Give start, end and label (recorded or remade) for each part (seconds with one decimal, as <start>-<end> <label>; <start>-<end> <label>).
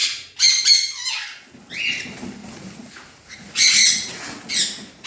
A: 0.0-2.4 recorded; 2.4-4.5 remade; 4.5-5.1 recorded